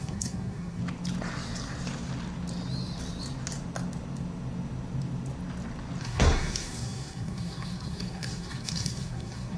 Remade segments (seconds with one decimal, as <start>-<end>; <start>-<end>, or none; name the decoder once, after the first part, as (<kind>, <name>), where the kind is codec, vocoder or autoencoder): 0.0-0.8 (codec, SNAC); 6.0-9.6